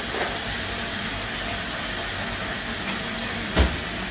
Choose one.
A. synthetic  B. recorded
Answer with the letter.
B